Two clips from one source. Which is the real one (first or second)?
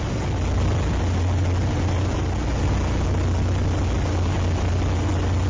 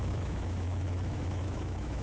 first